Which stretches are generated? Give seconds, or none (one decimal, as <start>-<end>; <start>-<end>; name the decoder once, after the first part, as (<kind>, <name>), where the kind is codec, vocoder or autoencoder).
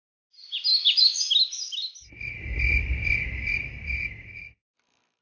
0.7-1.3 (autoencoder, DAC-VAE)